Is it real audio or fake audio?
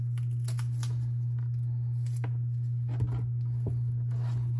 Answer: real